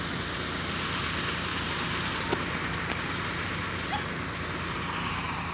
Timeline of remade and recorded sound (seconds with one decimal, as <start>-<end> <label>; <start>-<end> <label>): 0.0-5.5 recorded